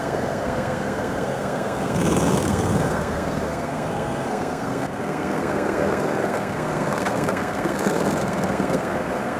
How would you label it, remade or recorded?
remade